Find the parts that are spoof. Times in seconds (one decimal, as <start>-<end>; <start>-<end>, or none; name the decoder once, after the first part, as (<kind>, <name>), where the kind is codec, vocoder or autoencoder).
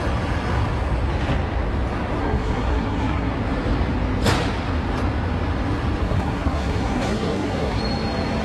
2.2-3.3 (codec, SNAC); 6.0-7.8